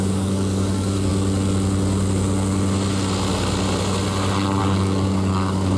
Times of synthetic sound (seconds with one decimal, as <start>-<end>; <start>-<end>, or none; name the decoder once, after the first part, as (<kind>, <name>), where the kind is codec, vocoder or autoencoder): 0.0-1.1 (codec, DAC); 4.6-5.8

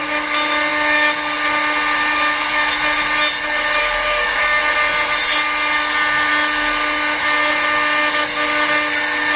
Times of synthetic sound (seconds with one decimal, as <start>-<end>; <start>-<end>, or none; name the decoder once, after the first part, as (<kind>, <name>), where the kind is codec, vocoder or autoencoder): 3.8-4.6 (codec, DAC)

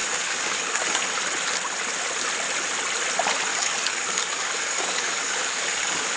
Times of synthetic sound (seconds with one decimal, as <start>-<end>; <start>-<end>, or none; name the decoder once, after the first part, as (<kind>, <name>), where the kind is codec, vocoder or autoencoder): 0.0-1.0 (codec, DAC); 3.5-6.2

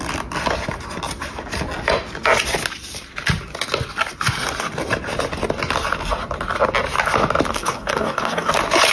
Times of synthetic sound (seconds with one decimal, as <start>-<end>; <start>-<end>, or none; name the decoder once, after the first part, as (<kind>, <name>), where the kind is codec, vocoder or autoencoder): 7.5-8.5 (codec, DAC)